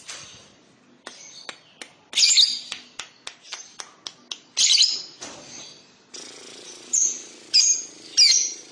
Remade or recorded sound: recorded